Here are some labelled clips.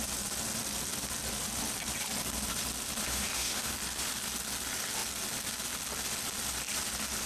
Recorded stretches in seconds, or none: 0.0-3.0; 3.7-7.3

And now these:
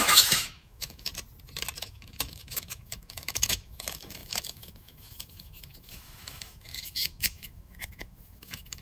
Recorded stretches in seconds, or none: 1.1-1.8

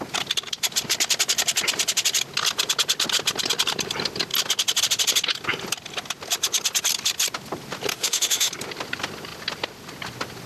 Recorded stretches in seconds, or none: 0.0-7.9; 8.5-10.5

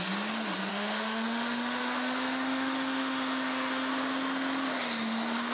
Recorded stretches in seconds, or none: 0.0-0.7; 3.9-5.5

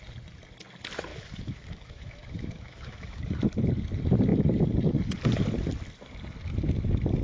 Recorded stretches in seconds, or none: 0.0-1.1; 3.2-7.2

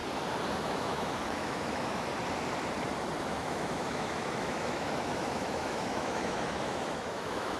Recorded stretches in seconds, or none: 0.0-0.6; 2.1-3.2